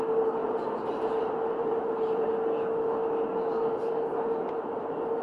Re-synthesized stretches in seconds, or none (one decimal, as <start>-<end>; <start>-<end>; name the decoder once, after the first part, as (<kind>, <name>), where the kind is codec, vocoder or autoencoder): 0.4-2.3 (vocoder, BigVGAN v2)